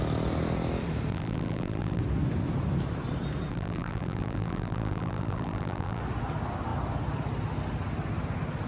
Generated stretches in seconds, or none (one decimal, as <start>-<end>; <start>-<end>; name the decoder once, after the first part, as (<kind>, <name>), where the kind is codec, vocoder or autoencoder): 1.1-2.0 (vocoder, BigVGAN v2); 3.5-6.0